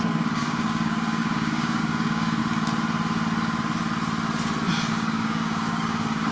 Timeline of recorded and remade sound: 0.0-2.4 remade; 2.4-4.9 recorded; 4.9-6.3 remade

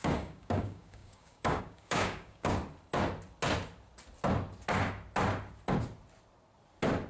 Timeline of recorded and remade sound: 0.0-2.6 remade; 2.6-7.1 recorded

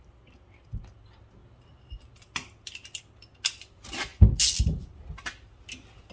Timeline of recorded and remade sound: 0.0-6.1 recorded

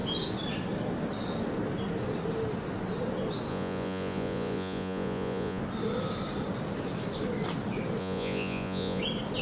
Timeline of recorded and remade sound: 0.0-3.5 recorded; 3.5-5.6 remade; 5.6-8.0 recorded; 8.0-9.0 remade; 9.0-9.4 recorded